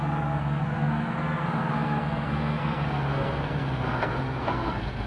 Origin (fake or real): fake